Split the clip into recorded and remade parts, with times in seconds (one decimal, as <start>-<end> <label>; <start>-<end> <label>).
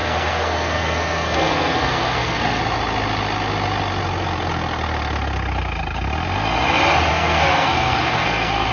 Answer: 0.0-2.6 remade; 2.6-7.1 recorded; 7.1-8.7 remade